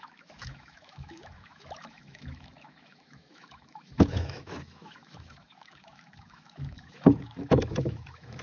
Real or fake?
fake